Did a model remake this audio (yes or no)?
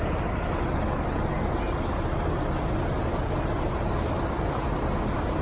no